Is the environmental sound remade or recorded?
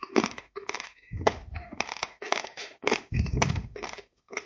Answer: remade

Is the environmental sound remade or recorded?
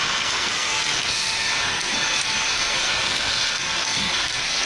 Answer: remade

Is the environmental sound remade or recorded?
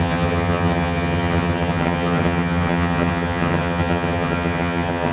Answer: remade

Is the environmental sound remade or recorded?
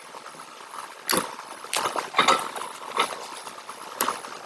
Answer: recorded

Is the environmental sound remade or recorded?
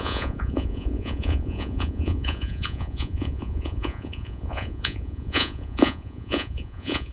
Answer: remade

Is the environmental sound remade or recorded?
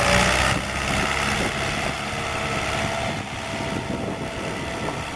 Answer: recorded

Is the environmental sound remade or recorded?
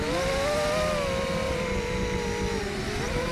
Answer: recorded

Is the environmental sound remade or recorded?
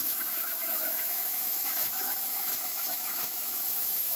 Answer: remade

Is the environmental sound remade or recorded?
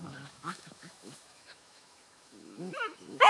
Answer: remade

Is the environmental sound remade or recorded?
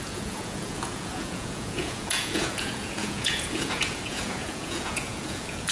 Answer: remade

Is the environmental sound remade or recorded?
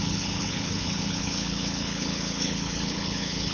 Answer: remade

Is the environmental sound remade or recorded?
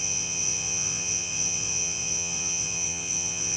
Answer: remade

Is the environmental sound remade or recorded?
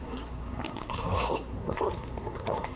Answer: remade